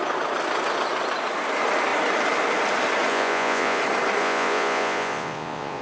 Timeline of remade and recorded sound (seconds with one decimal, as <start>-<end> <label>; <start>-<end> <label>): 0.0-3.1 recorded; 3.1-3.8 remade; 3.8-4.2 recorded; 4.2-5.8 remade